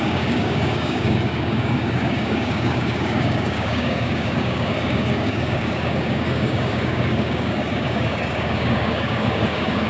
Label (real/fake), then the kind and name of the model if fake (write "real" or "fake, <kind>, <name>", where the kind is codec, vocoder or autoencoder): fake, codec, DAC